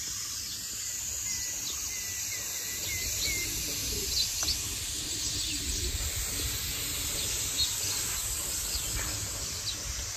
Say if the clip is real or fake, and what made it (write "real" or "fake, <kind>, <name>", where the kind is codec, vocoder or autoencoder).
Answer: real